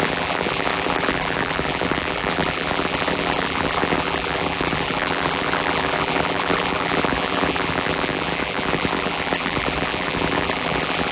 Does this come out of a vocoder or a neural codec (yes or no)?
yes